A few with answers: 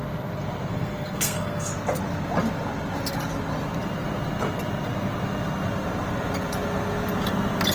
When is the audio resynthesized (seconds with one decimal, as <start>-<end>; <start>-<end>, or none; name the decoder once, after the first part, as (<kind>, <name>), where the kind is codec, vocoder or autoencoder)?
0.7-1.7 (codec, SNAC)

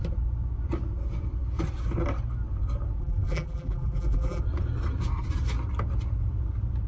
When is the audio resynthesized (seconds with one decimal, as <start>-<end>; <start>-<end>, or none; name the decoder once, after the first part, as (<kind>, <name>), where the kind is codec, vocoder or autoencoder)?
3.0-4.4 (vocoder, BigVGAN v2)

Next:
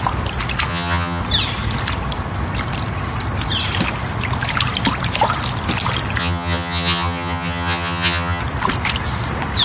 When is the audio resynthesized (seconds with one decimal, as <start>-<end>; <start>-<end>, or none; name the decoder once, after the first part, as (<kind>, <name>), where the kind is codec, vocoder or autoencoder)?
0.7-1.2 (vocoder, HiFi-GAN); 6.2-8.4

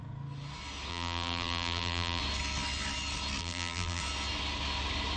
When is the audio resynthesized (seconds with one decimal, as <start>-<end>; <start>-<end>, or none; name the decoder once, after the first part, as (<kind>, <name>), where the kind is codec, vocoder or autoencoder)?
0.9-2.2 (vocoder, BigVGAN v2); 3.4-4.0